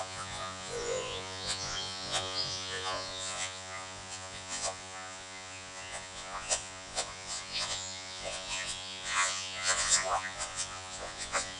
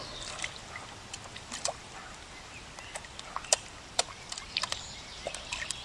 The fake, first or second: first